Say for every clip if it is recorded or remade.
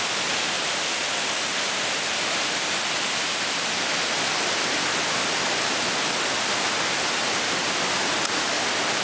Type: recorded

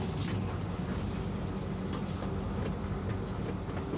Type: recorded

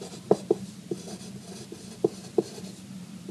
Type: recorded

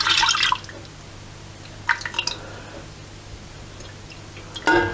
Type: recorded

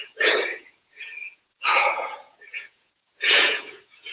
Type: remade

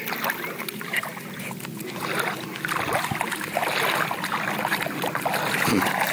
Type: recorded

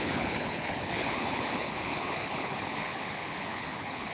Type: remade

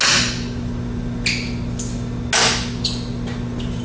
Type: recorded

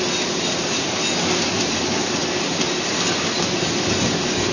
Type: recorded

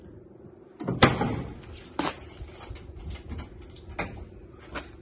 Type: recorded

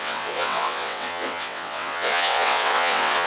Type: remade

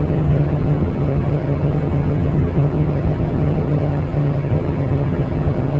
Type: remade